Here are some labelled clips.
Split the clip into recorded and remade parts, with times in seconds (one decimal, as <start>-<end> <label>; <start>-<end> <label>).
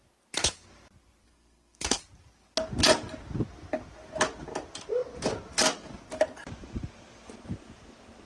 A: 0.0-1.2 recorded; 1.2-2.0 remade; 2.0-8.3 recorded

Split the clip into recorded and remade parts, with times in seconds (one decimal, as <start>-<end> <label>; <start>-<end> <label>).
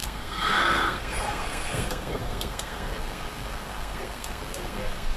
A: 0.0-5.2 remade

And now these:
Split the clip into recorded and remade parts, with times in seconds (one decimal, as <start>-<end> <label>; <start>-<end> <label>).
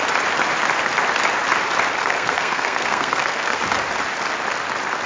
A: 0.0-2.0 recorded; 2.0-3.6 remade; 3.6-5.1 recorded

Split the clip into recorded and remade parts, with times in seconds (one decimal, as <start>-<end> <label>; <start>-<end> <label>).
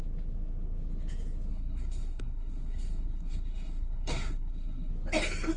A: 0.0-1.5 recorded; 1.5-4.9 remade; 4.9-5.6 recorded